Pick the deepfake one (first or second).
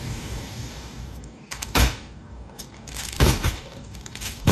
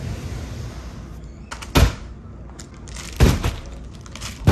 first